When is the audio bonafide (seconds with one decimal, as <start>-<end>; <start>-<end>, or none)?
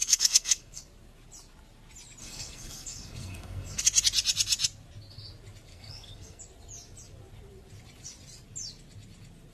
0.8-2.2; 3.8-5.7; 6.4-9.5